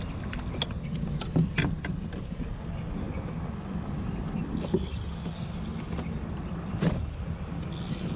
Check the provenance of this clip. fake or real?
real